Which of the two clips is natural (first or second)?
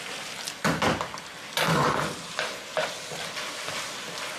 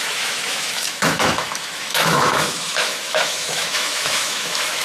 first